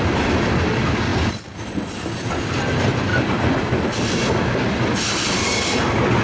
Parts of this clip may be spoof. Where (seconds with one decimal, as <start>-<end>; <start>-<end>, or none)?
none

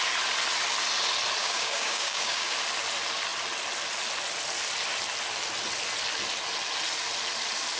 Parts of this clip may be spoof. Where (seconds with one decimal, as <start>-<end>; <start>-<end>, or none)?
1.4-2.5

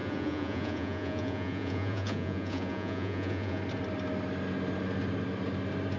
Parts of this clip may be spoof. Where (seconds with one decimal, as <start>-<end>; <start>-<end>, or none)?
0.0-3.6

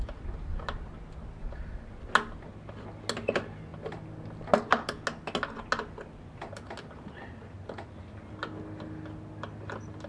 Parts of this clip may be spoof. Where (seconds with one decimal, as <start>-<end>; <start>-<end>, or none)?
none